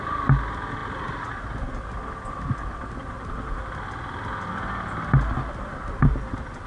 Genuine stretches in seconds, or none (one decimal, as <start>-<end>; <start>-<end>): 0.0-6.7